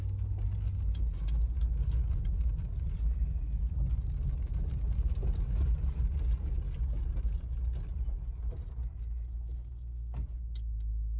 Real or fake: real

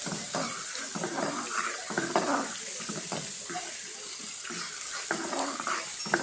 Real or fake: real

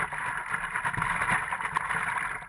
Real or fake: real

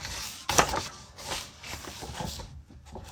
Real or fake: fake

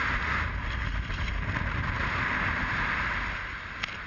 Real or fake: real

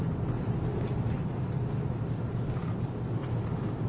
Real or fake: real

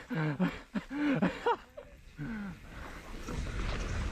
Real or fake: real